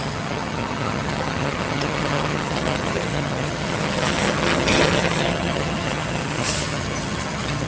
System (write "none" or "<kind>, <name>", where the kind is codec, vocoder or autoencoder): vocoder, HiFi-GAN